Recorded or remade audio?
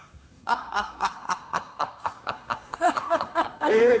remade